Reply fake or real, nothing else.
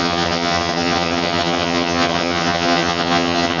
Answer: fake